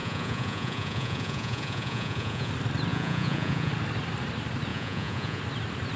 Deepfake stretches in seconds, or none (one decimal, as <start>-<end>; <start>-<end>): 0.0-2.5; 2.9-3.7; 4.7-5.4